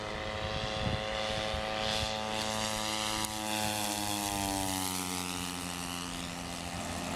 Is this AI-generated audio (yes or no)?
no